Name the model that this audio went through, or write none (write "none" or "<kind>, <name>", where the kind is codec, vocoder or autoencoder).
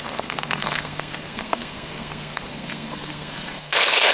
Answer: codec, SNAC